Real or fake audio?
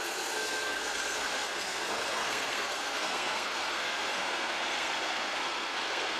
fake